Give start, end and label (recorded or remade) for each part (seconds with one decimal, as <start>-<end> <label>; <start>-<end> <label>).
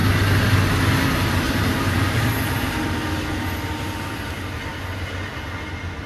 0.0-6.1 recorded